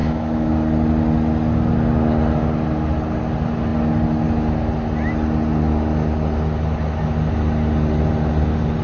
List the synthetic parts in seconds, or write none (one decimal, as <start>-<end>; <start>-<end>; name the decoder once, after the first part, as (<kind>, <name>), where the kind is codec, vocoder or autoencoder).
0.0-0.5 (autoencoder, DAC-VAE)